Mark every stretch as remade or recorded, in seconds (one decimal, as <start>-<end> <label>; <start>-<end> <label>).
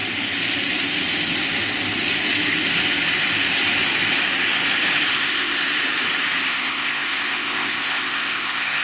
0.0-5.1 recorded; 5.1-5.6 remade; 5.6-6.5 recorded; 6.5-8.8 remade